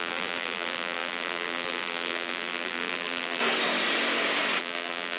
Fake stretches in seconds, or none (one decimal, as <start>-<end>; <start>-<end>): 0.0-3.4; 4.6-5.2